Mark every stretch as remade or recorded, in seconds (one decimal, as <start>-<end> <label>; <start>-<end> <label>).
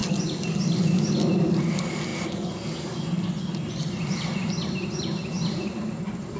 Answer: 0.0-6.4 recorded